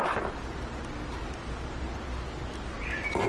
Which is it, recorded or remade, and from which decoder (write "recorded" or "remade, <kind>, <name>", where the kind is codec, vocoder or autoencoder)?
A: recorded